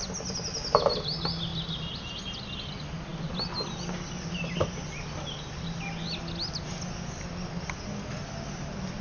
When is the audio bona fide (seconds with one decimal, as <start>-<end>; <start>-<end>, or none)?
0.0-9.0